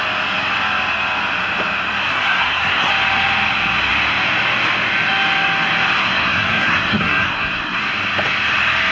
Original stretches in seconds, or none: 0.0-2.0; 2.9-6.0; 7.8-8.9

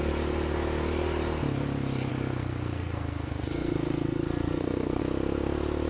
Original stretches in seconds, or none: 0.0-2.1; 5.0-5.9

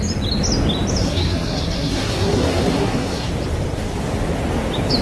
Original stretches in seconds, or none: 0.0-1.0; 3.3-5.0

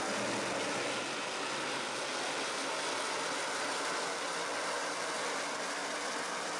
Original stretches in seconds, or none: 0.0-6.6

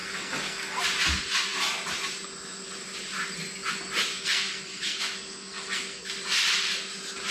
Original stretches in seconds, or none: 0.8-4.1; 6.1-7.3

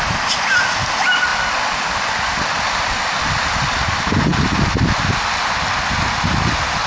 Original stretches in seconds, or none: 0.0-6.9